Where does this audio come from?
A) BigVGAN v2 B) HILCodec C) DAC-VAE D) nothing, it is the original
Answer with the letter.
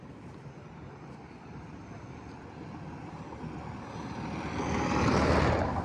D